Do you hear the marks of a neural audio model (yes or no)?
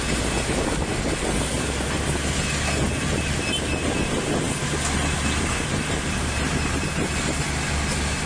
no